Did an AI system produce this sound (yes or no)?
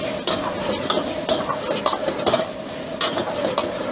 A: no